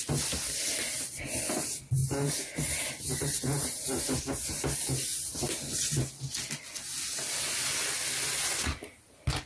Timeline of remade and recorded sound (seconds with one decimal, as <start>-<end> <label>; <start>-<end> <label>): 0.0-9.5 recorded

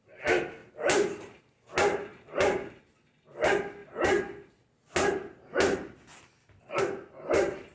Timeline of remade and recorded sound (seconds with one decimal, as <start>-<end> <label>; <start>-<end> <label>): 0.0-0.6 recorded; 0.6-1.4 remade; 1.4-2.1 recorded; 2.1-2.9 remade; 2.9-7.7 recorded

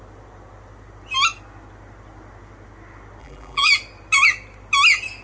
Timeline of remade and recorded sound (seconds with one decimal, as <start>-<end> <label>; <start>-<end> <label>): 0.0-3.2 recorded; 3.2-3.7 remade; 3.7-5.2 recorded

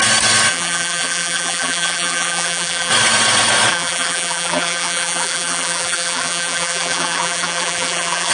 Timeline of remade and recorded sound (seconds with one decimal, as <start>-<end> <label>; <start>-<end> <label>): 0.0-0.5 recorded; 0.5-2.9 remade; 2.9-3.7 recorded; 3.7-8.3 remade

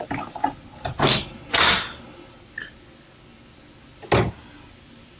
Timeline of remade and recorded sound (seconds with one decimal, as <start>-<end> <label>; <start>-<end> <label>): 0.0-5.2 recorded

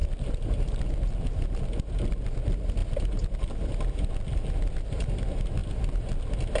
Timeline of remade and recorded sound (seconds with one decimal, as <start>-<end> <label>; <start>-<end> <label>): 0.0-0.8 remade; 0.8-6.6 recorded